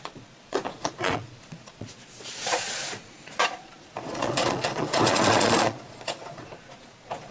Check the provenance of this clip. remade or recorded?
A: remade